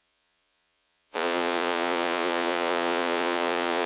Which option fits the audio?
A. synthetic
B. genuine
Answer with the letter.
A